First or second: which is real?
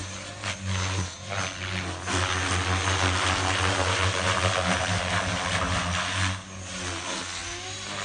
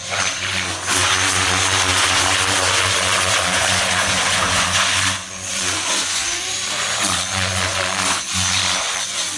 first